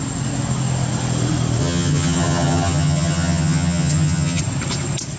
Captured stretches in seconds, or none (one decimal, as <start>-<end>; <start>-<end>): 0.0-1.6; 4.4-5.2